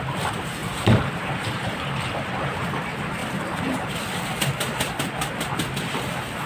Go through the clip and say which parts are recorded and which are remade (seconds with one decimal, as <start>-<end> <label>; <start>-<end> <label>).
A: 0.0-0.6 recorded; 0.6-2.6 remade; 2.6-6.5 recorded